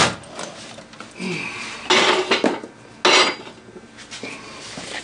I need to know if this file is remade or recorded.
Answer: recorded